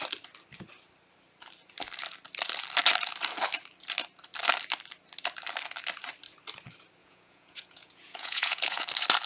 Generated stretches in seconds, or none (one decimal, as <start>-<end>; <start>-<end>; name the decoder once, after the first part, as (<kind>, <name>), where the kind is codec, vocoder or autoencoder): 7.0-8.8 (vocoder, Vocos)